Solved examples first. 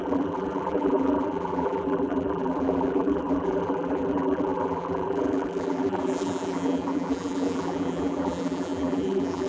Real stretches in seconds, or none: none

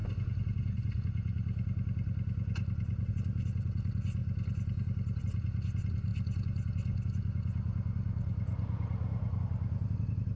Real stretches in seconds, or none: 0.0-10.4